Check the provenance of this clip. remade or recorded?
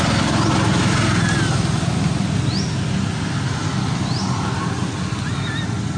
recorded